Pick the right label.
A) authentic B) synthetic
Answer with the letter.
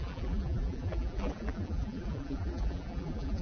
B